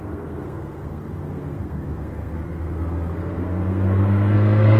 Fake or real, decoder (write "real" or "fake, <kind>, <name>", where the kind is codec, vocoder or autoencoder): fake, codec, SNAC